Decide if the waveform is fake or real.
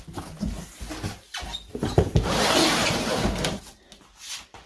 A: real